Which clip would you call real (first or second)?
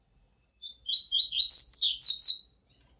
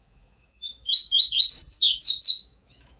first